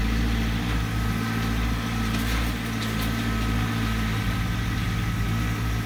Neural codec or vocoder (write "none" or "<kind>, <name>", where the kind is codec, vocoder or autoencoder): none